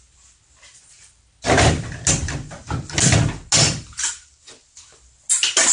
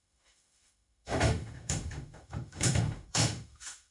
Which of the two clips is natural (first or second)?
first